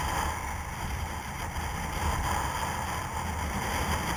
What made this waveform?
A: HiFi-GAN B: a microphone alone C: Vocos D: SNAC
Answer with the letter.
B